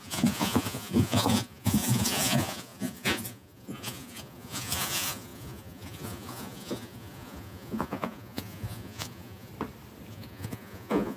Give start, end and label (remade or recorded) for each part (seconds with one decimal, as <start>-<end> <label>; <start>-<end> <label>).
0.0-9.5 remade; 9.5-10.1 recorded; 10.1-11.2 remade